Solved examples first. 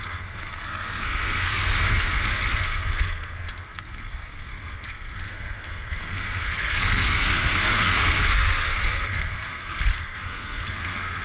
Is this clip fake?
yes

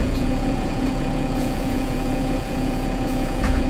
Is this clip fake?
yes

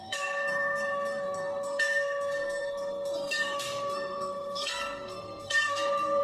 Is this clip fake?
yes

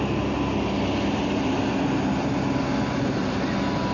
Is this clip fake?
no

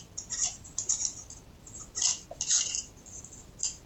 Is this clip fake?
no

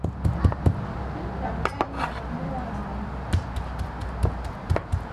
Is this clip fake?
no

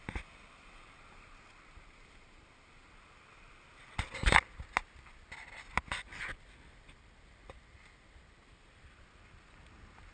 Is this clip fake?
no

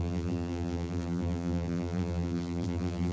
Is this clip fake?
yes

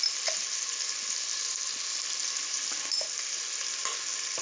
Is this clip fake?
no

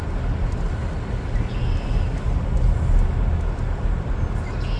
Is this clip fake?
no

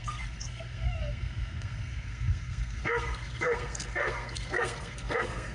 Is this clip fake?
yes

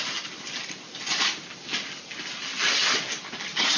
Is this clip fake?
no